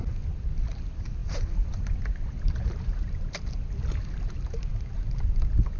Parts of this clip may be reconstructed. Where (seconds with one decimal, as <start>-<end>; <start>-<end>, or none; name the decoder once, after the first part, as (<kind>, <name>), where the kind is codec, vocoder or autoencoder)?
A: none